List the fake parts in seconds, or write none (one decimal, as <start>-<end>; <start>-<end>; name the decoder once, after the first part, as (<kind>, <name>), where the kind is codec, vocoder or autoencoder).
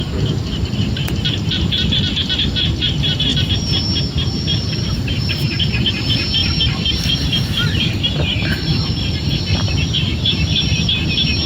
4.5-5.9 (vocoder, BigVGAN v2); 6.4-11.1